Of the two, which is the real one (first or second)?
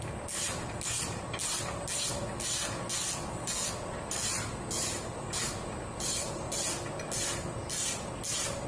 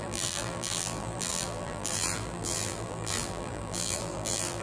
first